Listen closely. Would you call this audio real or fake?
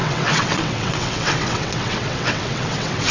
fake